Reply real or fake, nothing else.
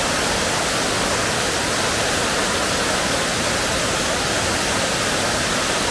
real